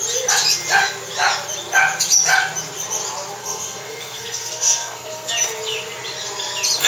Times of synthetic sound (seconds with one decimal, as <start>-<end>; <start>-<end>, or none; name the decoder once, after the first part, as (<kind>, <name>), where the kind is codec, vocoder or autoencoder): 3.4-5.3 (codec, SNAC)